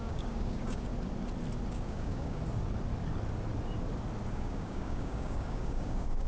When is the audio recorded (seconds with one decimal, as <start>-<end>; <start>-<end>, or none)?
0.9-1.7; 2.4-4.3